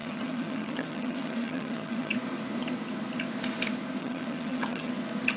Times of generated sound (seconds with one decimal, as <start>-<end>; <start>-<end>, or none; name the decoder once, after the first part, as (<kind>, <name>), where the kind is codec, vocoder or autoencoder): 0.0-2.1 (vocoder, HiFi-GAN); 4.0-4.9